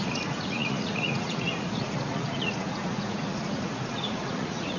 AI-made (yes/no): yes